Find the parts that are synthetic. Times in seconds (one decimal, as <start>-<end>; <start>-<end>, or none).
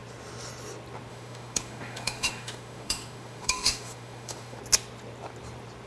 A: 1.1-4.6